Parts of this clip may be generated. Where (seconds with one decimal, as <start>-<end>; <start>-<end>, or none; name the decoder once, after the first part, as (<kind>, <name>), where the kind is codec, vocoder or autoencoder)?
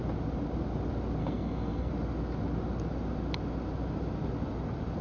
1.2-1.9 (codec, SNAC)